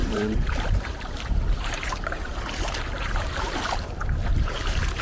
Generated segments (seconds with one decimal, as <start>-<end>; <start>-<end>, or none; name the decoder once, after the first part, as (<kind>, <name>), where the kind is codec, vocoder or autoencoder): 0.0-5.0 (vocoder, BigVGAN v2)